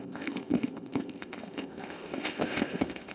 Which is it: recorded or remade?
remade